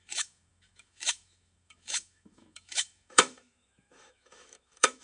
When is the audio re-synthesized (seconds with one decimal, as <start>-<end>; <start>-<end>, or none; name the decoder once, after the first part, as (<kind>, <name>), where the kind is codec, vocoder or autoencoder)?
0.0-5.0 (autoencoder, DAC-VAE)